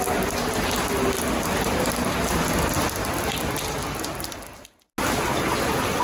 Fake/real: real